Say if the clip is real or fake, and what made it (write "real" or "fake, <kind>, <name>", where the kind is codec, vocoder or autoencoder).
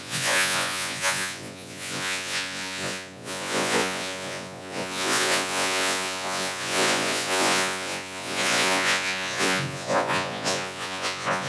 fake, vocoder, Vocos